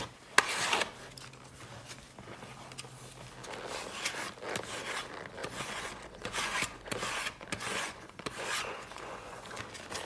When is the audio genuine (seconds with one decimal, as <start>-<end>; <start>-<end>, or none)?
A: 0.0-5.4; 9.6-10.1